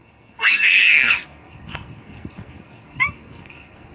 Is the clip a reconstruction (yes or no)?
yes